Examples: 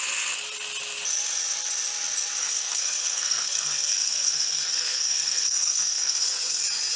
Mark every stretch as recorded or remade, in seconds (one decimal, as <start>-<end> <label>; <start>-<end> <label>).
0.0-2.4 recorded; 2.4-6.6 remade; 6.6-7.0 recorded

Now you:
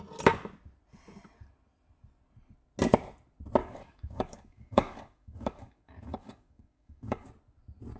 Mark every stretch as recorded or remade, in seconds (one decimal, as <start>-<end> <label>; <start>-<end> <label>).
0.0-3.6 recorded; 3.6-7.3 remade; 7.3-8.0 recorded

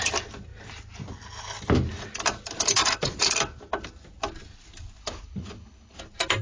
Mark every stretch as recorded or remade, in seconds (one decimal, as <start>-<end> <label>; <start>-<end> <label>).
0.0-5.0 recorded; 5.0-6.0 remade; 6.0-6.4 recorded

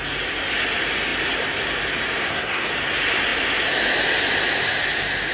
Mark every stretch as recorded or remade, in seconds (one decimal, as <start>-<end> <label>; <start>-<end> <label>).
0.0-2.2 recorded; 2.2-2.7 remade; 2.7-5.3 recorded

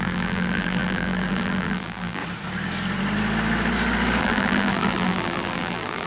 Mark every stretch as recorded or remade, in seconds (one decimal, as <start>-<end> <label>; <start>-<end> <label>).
0.0-2.2 remade; 2.2-4.2 recorded; 4.2-6.1 remade

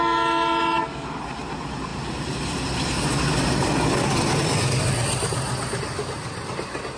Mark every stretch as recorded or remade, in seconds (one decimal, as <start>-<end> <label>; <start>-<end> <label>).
0.0-7.0 recorded